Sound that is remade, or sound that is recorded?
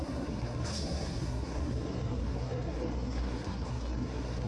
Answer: remade